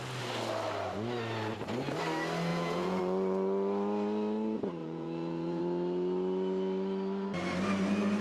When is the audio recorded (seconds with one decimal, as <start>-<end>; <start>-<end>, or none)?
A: 0.0-2.5; 3.0-4.8; 5.6-8.2